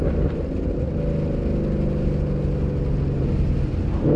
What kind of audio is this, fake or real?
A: real